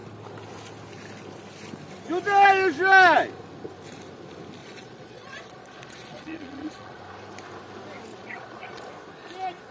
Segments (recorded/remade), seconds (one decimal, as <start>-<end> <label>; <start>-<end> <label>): 0.0-4.6 recorded; 4.6-7.0 remade; 7.0-8.1 recorded; 8.1-8.9 remade; 8.9-9.7 recorded